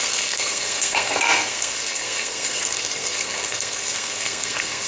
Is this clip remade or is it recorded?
remade